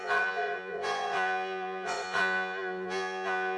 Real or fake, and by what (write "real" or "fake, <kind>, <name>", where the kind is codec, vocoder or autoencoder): fake, vocoder, Vocos